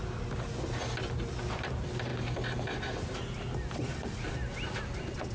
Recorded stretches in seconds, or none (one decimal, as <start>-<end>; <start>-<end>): 0.0-5.3